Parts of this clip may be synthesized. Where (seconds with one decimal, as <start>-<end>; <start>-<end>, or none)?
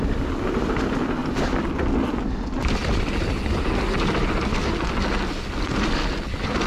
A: none